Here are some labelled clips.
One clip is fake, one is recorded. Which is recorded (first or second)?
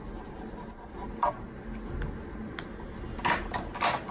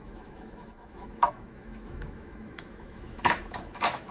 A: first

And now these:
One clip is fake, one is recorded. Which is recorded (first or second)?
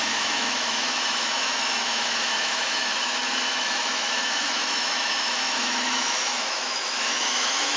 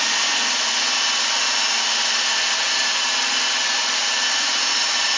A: second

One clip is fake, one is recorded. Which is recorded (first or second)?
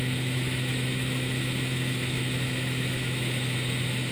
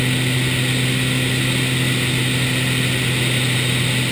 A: second